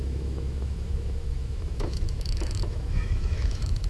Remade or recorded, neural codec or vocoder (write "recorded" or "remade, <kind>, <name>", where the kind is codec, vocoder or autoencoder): remade, autoencoder, DAC-VAE